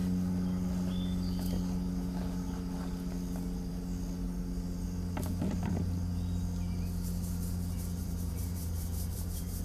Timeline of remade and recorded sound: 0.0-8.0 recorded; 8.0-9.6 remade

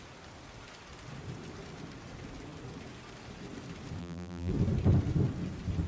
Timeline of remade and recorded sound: 0.0-4.0 recorded; 4.0-4.5 remade; 4.5-5.9 recorded